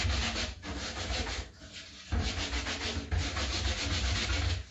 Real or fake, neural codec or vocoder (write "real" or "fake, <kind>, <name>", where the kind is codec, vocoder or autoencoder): real